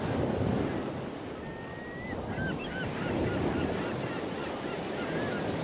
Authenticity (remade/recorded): recorded